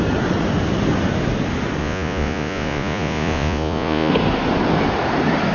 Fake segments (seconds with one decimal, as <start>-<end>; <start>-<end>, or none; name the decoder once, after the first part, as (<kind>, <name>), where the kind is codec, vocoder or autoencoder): 1.8-4.1 (vocoder, Vocos)